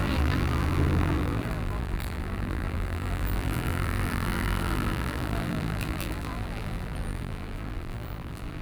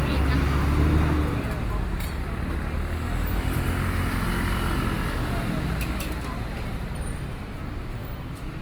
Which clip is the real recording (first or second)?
second